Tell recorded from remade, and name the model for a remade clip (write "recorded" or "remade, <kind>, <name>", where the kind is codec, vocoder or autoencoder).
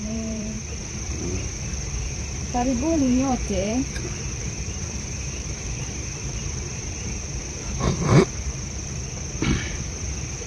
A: remade, vocoder, BigVGAN v2